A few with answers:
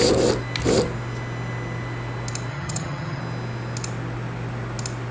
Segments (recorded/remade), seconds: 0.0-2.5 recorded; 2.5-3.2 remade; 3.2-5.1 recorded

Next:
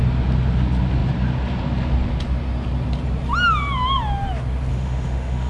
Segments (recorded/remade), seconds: 0.0-4.7 recorded; 4.7-5.5 remade

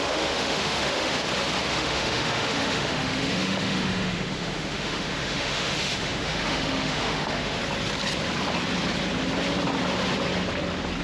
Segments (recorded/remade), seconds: 0.0-1.1 remade; 1.1-1.7 recorded; 1.7-7.6 remade; 7.6-11.0 recorded

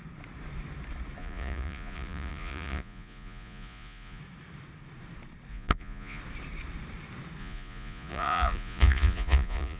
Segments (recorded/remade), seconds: 0.0-1.2 recorded; 1.2-4.2 remade; 4.2-5.5 recorded; 5.5-6.2 remade; 6.2-7.4 recorded; 7.4-9.8 remade